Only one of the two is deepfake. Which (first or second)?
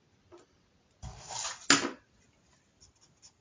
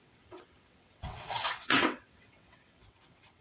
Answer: second